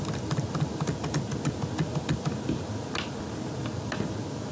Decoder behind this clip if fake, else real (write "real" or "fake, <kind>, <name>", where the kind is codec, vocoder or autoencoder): real